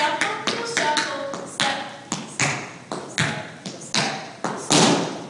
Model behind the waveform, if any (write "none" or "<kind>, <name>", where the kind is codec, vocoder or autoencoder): none